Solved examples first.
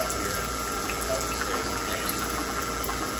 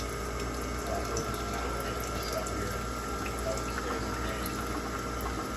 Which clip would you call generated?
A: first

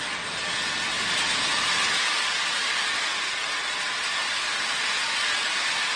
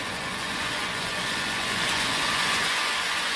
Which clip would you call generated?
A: second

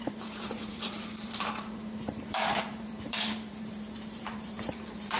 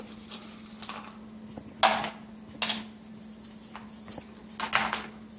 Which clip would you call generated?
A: first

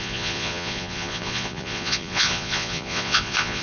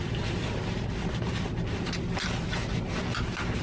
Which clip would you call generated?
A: first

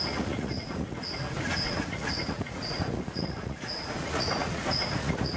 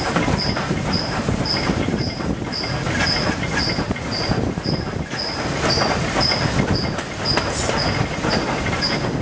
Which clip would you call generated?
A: first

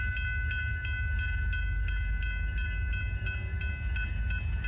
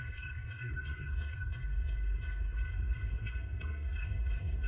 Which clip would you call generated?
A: second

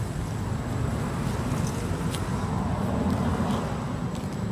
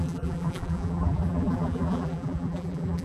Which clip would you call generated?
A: second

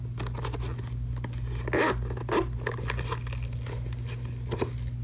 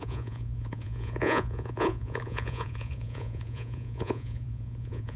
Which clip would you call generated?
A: second